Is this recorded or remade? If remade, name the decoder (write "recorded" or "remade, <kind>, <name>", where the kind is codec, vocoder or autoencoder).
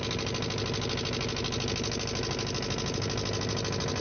recorded